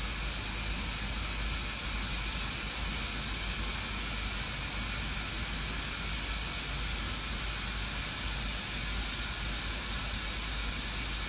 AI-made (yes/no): no